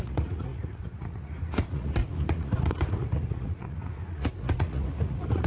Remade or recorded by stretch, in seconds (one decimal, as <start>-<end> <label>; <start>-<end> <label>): 0.0-5.5 remade